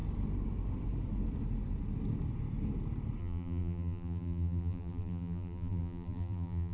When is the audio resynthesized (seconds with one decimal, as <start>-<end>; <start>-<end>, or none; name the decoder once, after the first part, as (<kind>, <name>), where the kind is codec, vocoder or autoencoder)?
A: 3.2-6.7 (vocoder, BigVGAN v2)